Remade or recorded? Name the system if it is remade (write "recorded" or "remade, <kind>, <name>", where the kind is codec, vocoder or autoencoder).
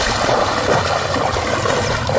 recorded